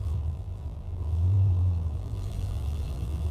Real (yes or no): no